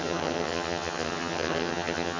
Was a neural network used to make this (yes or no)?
yes